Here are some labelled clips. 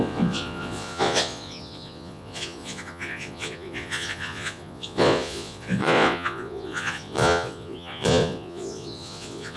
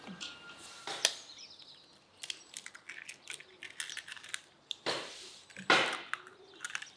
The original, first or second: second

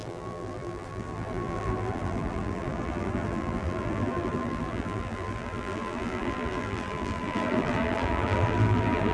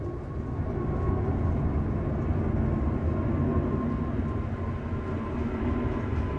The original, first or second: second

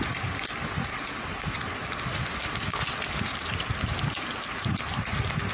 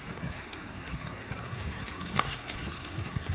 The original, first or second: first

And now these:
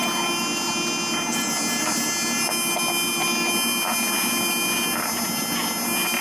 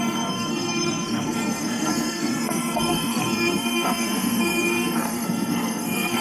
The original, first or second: first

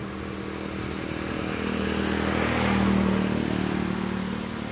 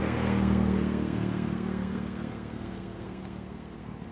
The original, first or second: first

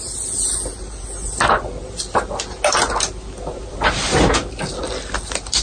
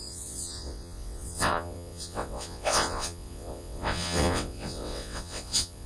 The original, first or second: first